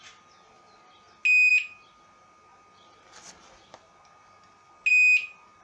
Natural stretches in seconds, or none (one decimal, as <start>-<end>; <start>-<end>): 0.0-5.6